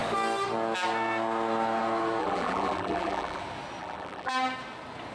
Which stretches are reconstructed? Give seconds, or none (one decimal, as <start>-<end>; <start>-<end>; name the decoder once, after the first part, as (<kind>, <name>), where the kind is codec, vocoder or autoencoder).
2.2-3.4 (vocoder, BigVGAN v2); 3.8-4.3